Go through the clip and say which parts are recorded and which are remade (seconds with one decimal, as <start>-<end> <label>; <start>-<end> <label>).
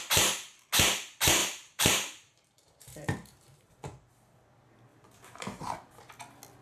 0.0-1.4 recorded; 1.4-4.1 remade; 4.1-4.9 recorded; 4.9-5.6 remade; 5.6-6.6 recorded